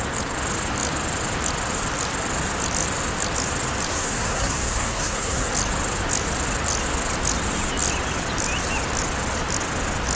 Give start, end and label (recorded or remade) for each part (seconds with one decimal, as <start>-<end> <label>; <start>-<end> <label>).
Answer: 0.0-3.9 recorded; 3.9-5.5 remade; 5.5-10.1 recorded